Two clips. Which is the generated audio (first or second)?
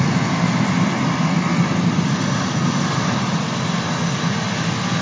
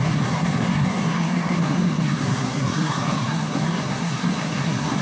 second